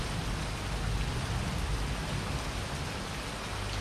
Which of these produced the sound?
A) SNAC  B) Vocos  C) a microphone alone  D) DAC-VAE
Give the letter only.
C